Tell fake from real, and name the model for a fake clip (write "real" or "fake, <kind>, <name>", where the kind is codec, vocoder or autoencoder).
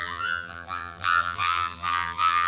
fake, vocoder, BigVGAN v2